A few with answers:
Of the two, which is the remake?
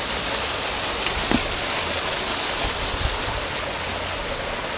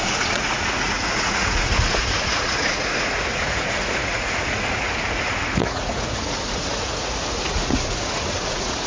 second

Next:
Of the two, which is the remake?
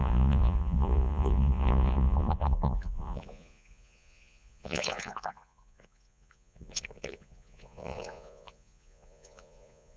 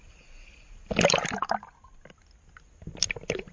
first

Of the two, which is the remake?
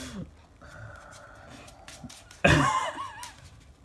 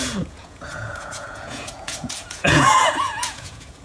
second